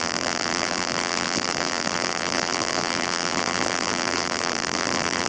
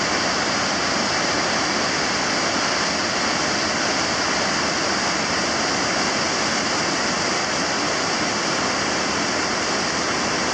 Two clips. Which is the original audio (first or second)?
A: second